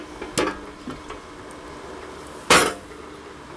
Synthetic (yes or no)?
no